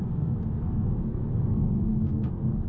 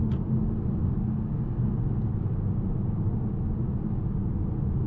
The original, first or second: second